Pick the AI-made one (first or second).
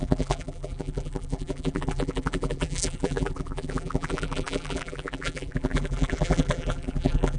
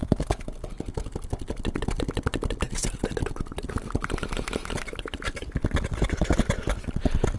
first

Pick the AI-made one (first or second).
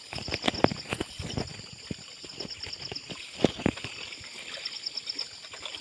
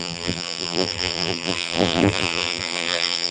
second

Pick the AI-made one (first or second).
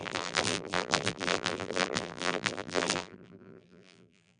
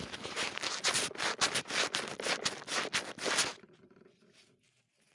first